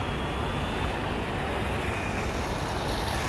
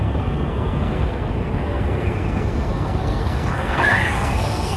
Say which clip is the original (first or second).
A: first